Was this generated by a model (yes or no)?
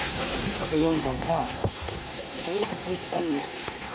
yes